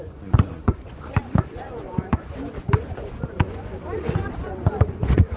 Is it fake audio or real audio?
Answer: fake